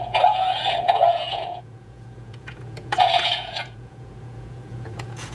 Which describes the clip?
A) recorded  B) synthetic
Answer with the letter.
B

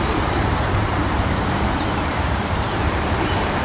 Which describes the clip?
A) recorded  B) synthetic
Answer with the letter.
B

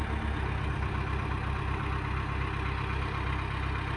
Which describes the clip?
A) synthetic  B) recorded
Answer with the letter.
B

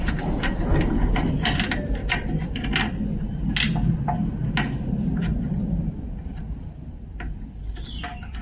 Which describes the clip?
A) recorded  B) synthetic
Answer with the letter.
A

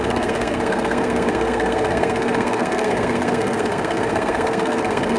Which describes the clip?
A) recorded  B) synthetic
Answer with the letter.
B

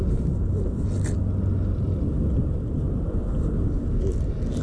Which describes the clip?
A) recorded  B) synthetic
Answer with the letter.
A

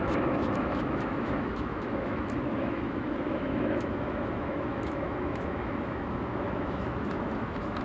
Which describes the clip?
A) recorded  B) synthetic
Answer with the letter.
B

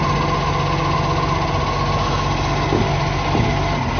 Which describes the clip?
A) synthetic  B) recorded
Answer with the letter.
B